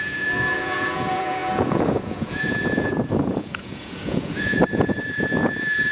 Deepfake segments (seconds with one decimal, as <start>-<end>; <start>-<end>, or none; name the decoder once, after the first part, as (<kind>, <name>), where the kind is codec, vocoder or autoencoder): 0.0-5.9 (vocoder, Vocos)